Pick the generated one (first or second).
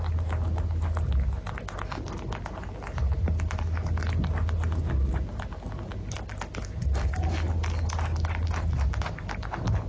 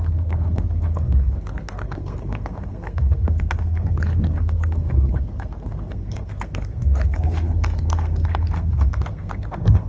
second